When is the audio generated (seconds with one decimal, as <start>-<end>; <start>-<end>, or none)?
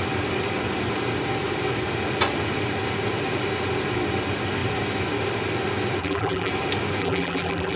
6.0-6.5; 7.0-7.8